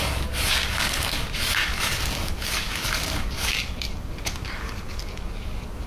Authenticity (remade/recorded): remade